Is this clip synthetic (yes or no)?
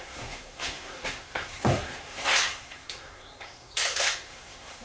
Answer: yes